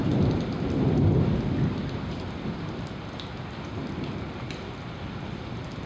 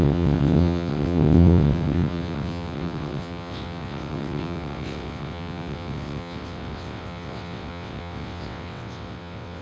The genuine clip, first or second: first